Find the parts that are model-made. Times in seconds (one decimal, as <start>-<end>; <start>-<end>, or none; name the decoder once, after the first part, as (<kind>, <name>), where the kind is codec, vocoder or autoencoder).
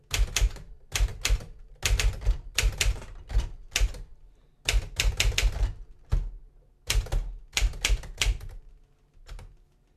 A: none